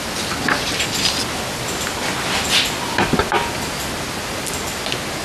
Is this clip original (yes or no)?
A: yes